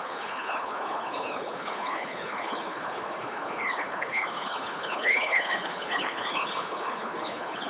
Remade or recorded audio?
remade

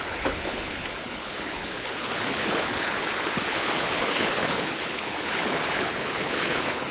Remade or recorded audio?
remade